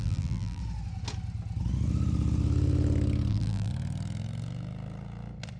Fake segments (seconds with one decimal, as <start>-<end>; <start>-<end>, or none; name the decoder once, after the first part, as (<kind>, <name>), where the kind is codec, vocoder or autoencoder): 0.0-0.6 (vocoder, BigVGAN v2); 3.3-3.7